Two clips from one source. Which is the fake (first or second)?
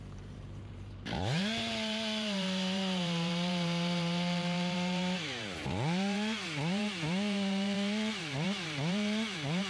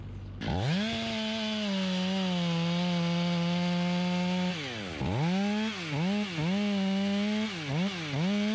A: first